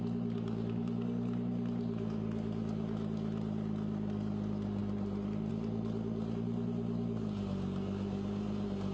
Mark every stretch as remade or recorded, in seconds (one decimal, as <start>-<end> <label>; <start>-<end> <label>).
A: 0.0-8.9 recorded